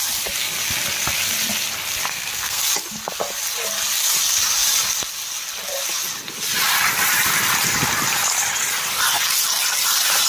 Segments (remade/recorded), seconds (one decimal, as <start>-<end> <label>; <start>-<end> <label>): 0.0-2.1 recorded; 2.1-2.6 remade; 2.6-10.3 recorded

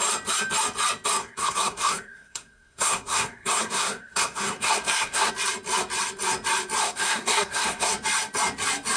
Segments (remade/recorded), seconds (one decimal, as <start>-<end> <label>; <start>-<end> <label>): 0.0-1.2 recorded; 1.2-5.3 remade; 5.3-6.8 recorded; 6.8-7.9 remade; 7.9-9.0 recorded

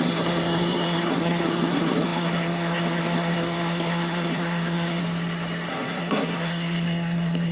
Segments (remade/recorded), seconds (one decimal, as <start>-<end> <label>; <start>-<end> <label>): 0.0-5.0 remade; 5.0-5.7 recorded; 5.7-7.5 remade

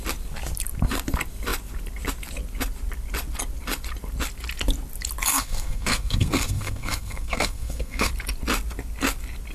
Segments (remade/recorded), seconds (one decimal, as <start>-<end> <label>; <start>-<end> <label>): 0.0-5.3 recorded; 5.3-8.1 remade; 8.1-9.5 recorded

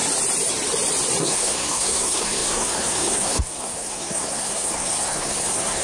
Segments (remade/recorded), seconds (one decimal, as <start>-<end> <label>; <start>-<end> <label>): 0.0-1.2 recorded; 1.2-5.8 remade

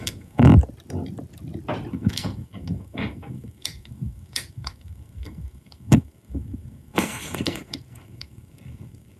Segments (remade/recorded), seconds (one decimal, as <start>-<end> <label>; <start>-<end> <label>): 0.0-0.5 remade; 0.5-1.9 recorded; 1.9-9.2 remade